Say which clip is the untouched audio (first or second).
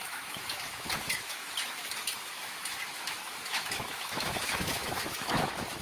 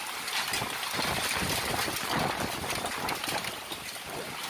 second